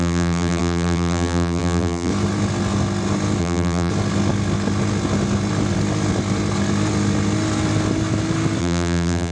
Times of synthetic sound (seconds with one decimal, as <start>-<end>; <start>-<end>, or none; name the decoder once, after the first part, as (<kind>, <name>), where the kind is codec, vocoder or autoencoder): 0.0-2.1 (vocoder, BigVGAN v2); 3.4-3.9; 8.6-9.3